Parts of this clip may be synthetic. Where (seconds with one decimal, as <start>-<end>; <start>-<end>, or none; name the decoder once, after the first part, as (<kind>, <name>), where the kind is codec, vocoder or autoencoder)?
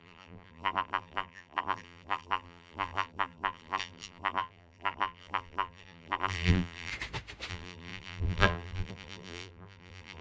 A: 0.0-6.9 (vocoder, BigVGAN v2); 7.5-10.2